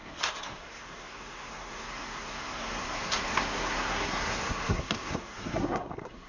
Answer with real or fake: fake